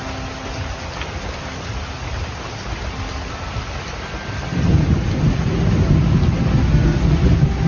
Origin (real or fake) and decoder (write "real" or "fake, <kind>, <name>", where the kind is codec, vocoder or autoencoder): real